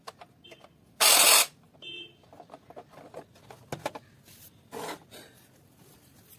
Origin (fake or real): real